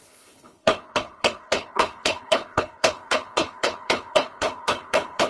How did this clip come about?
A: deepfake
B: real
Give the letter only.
A